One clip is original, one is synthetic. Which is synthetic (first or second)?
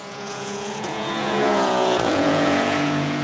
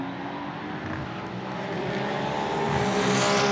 first